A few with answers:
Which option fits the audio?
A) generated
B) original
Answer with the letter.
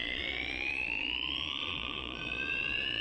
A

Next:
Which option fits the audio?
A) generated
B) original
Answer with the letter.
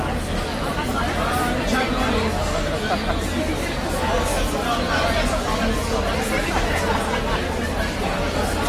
B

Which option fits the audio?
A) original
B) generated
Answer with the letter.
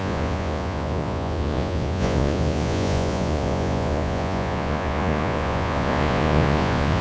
B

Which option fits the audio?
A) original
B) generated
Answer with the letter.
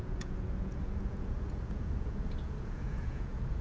B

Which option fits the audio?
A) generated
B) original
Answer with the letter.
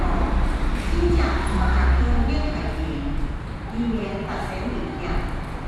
B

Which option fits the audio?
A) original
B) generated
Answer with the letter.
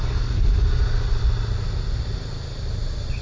A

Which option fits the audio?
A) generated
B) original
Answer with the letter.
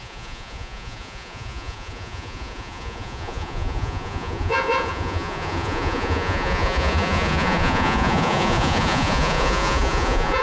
A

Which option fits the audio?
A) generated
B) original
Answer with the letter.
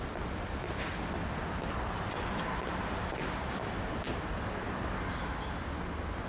B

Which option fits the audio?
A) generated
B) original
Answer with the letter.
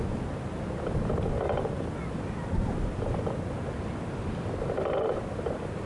B